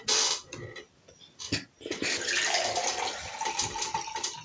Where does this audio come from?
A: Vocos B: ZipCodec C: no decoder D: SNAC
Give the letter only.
C